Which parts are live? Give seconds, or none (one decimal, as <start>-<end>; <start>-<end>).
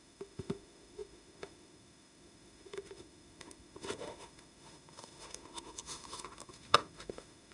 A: none